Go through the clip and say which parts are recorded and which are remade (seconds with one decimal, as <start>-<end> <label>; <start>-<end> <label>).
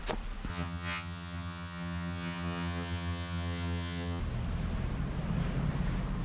0.0-0.5 recorded; 0.5-4.2 remade; 4.2-6.2 recorded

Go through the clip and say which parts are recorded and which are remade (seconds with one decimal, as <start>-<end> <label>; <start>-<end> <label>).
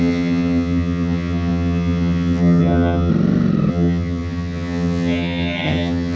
0.0-3.1 remade; 3.1-3.7 recorded; 3.7-6.2 remade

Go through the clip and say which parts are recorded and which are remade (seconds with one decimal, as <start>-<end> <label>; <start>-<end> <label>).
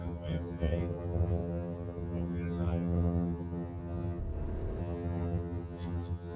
0.0-4.2 remade; 4.2-4.8 recorded; 4.8-6.4 remade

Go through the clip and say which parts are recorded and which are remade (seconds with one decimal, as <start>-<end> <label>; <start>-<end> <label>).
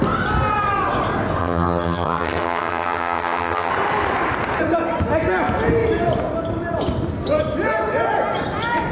0.0-1.4 recorded; 1.4-3.7 remade; 3.7-8.9 recorded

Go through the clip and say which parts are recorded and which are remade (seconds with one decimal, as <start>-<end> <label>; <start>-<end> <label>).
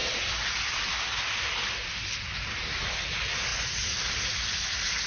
0.0-5.1 recorded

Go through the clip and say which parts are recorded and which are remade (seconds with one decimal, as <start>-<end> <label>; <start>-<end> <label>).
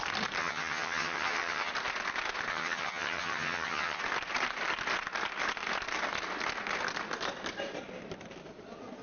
0.0-0.4 recorded; 0.4-1.7 remade; 1.7-2.5 recorded; 2.5-4.0 remade; 4.0-9.0 recorded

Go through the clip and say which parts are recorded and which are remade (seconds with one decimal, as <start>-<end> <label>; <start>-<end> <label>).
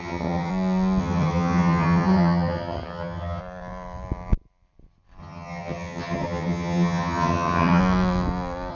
0.0-0.5 remade; 0.5-1.0 recorded; 1.0-3.4 remade; 3.4-5.2 recorded; 5.2-7.8 remade; 7.8-8.7 recorded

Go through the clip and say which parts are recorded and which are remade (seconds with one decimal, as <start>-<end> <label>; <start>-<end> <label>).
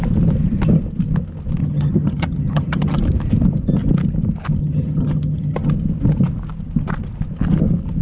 0.0-1.6 recorded; 1.6-3.0 remade; 3.0-4.6 recorded; 4.6-5.7 remade; 5.7-8.0 recorded